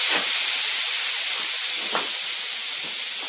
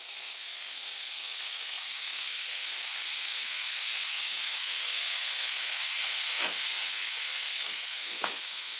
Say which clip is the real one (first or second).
first